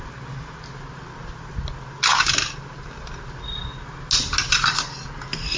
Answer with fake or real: real